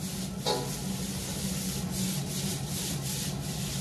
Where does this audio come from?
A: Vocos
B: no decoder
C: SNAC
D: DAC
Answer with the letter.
B